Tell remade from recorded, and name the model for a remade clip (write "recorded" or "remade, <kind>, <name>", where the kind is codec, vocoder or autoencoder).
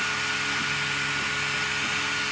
recorded